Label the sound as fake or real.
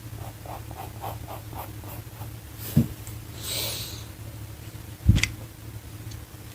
real